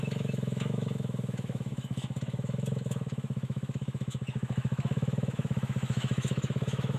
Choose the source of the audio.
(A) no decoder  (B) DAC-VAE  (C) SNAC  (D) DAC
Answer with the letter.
B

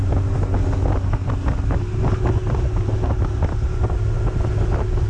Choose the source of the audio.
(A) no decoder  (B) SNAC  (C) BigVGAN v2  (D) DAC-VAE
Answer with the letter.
A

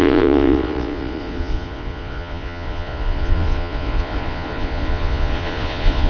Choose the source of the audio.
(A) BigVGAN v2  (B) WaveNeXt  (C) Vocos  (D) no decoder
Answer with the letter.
C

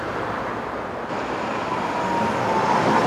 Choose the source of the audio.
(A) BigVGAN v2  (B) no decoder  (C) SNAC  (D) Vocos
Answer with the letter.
B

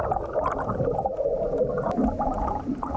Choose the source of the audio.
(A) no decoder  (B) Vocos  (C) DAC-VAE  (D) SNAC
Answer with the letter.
A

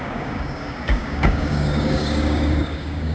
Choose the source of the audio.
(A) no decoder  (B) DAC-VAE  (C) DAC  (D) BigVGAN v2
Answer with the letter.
C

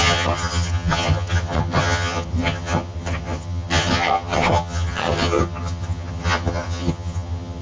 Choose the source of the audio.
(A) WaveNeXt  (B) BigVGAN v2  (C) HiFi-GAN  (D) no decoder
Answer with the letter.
C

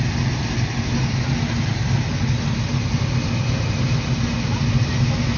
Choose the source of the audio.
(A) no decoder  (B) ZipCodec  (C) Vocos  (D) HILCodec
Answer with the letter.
A